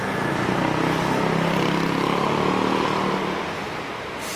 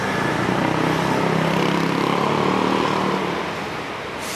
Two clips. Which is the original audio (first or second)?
first